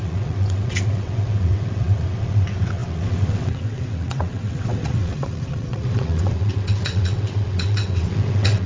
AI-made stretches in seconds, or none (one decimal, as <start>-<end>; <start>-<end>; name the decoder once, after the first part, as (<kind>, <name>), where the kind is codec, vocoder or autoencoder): 0.0-8.7 (vocoder, WaveNeXt)